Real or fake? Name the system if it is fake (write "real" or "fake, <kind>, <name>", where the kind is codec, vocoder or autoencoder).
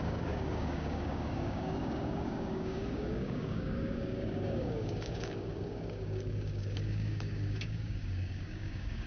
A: fake, codec, DAC